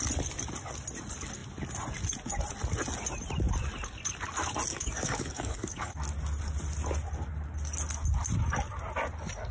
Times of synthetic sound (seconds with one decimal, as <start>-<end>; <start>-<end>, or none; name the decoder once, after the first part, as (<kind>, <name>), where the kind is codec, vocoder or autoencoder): 4.7-5.9 (codec, DAC)